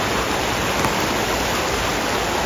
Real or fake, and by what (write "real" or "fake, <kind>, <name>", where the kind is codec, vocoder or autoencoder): real